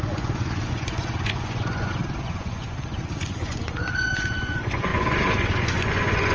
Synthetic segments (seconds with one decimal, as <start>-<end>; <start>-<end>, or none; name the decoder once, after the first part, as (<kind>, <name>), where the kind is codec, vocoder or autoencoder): 0.0-6.3 (vocoder, Vocos)

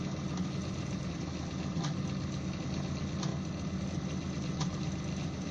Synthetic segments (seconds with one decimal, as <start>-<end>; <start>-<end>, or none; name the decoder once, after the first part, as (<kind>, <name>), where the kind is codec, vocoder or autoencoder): none